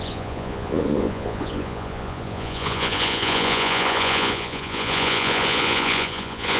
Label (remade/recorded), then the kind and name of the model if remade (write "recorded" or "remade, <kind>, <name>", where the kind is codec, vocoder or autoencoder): remade, vocoder, Vocos